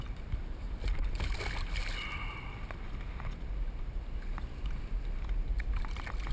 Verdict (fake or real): real